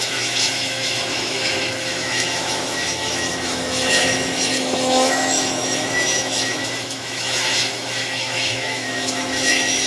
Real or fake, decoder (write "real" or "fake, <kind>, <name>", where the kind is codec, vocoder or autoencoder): fake, autoencoder, DAC-VAE